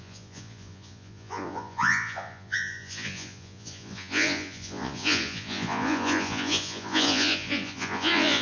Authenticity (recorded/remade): remade